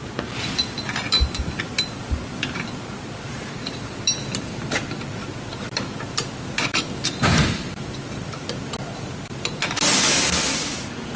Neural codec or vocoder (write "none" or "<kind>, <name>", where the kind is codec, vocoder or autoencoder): vocoder, BigVGAN v2